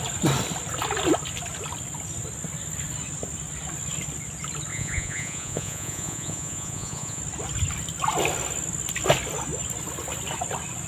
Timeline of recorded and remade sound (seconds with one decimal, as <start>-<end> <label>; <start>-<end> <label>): 0.0-4.7 recorded; 4.7-7.2 remade; 7.2-10.9 recorded